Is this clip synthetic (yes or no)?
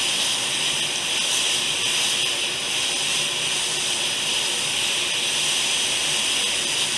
no